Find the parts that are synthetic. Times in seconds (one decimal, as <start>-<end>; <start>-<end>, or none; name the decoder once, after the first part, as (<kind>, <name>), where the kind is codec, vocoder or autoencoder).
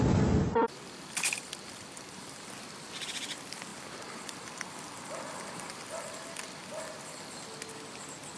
0.6-2.5 (vocoder, BigVGAN v2); 3.7-7.3